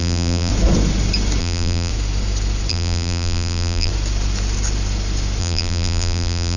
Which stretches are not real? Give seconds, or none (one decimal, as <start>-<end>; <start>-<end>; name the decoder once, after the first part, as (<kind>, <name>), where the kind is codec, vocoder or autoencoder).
0.0-0.5 (vocoder, BigVGAN v2); 1.4-1.9; 2.7-3.9; 5.4-6.6